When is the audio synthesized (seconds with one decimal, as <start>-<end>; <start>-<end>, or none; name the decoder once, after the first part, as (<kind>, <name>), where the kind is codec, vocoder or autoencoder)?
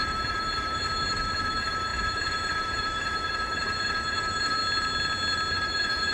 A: 0.0-4.6 (autoencoder, DAC-VAE); 5.5-6.1